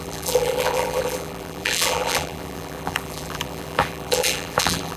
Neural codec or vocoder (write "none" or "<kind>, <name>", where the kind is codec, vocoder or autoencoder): vocoder, BigVGAN v2